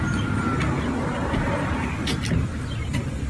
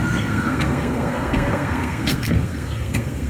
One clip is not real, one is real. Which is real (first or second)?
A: first